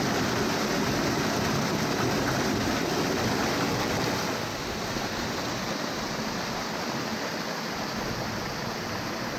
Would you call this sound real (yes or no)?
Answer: yes